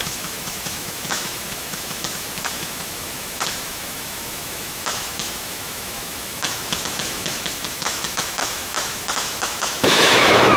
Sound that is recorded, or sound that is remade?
remade